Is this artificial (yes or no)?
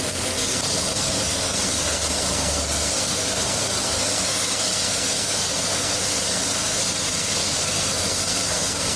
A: yes